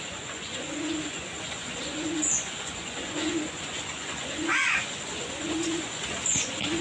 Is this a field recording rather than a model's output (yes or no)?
no